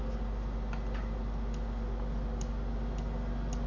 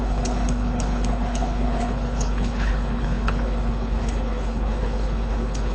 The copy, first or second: second